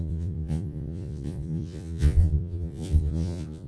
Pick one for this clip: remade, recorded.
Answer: remade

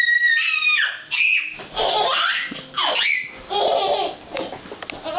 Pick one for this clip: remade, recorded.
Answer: recorded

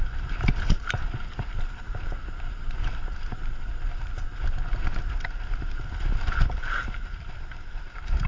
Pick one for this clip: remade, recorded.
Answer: recorded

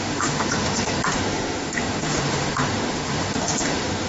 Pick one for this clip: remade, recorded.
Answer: remade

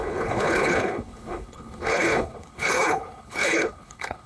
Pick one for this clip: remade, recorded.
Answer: remade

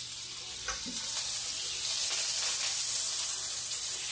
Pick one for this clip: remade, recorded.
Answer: recorded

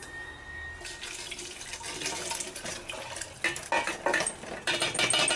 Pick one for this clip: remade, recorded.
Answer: recorded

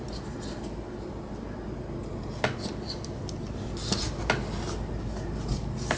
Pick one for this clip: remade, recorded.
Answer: recorded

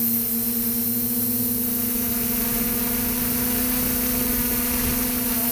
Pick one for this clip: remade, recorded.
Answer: recorded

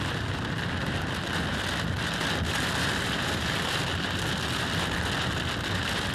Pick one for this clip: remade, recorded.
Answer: recorded